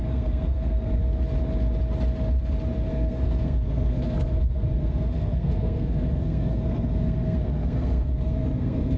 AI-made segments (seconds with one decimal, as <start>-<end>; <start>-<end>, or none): 0.0-1.0; 2.9-9.0